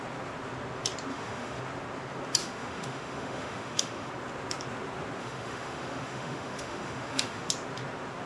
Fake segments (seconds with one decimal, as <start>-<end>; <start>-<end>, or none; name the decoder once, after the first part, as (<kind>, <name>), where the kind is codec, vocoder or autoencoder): 1.1-1.6 (autoencoder, DAC-VAE); 2.4-4.1; 5.2-7.5